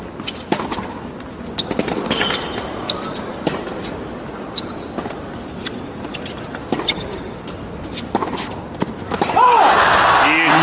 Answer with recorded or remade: recorded